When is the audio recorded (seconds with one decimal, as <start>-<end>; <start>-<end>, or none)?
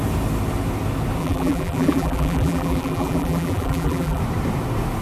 0.0-1.2; 4.2-5.0